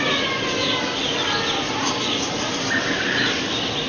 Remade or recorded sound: recorded